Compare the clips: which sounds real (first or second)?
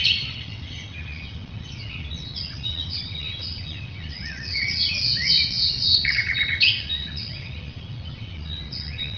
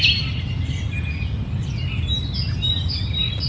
second